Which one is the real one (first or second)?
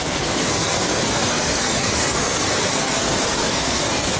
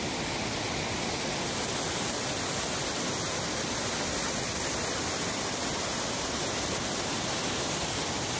second